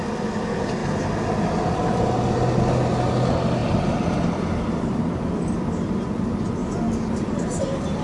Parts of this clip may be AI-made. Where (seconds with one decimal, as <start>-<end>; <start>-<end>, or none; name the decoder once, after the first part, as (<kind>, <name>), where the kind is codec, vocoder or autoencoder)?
none